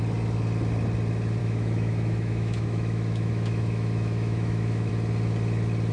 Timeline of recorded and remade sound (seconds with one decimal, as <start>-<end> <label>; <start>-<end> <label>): 0.0-1.4 recorded; 1.4-4.9 remade; 4.9-5.9 recorded

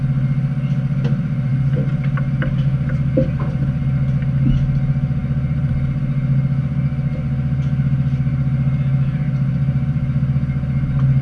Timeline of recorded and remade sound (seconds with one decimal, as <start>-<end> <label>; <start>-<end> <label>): 0.0-11.2 recorded